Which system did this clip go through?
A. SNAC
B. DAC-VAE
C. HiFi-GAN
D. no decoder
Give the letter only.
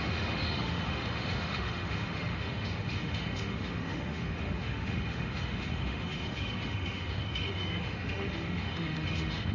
B